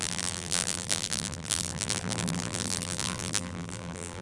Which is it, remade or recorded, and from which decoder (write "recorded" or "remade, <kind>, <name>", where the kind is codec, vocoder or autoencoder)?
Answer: remade, vocoder, BigVGAN v2